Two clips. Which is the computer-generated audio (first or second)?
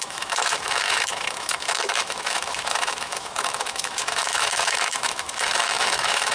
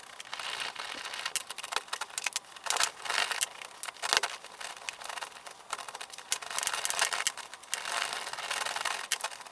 first